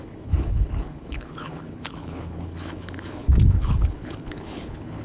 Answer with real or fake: fake